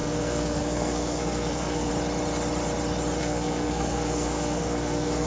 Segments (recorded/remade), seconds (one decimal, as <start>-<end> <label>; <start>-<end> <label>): 0.0-1.9 remade; 1.9-3.2 recorded; 3.2-5.3 remade